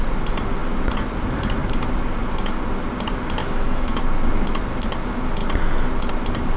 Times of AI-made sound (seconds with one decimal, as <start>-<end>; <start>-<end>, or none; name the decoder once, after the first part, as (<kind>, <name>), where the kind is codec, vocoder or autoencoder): 3.4-4.0 (autoencoder, DAC-VAE)